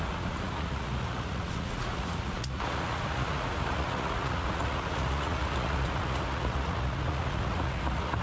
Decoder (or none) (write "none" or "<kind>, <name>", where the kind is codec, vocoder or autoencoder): vocoder, Vocos